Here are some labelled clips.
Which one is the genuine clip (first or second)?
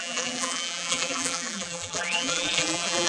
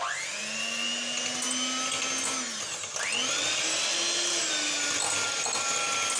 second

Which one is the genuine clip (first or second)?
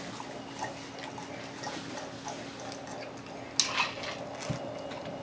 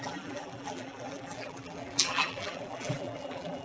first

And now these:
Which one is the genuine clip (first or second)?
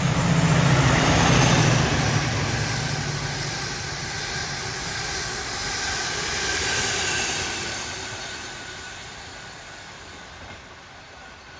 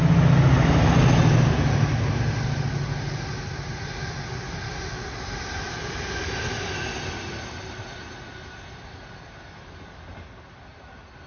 second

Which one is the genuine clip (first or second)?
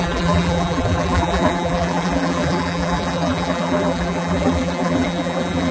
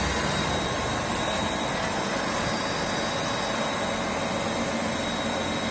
second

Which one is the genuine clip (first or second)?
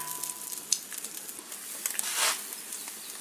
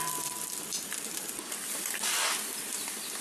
first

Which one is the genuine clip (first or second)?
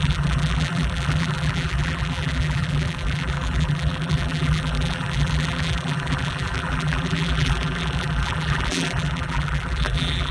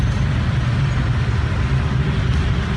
second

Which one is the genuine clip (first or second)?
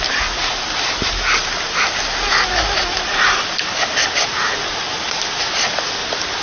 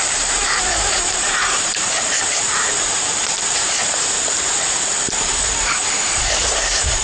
first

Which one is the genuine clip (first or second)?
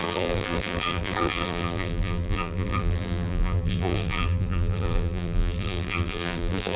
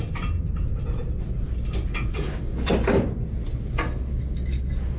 second